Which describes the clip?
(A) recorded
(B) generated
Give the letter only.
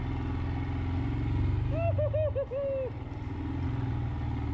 A